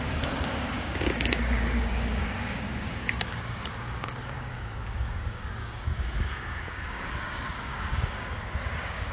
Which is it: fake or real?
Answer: fake